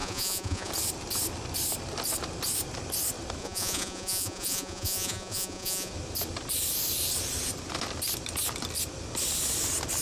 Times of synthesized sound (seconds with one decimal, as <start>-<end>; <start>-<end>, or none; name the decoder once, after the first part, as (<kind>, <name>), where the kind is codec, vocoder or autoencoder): 0.0-0.7 (vocoder, Vocos); 3.4-5.9